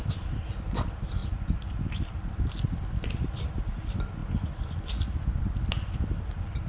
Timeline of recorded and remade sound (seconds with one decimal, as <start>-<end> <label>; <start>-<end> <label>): 0.0-6.7 recorded